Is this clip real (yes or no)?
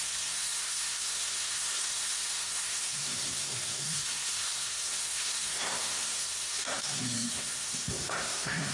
no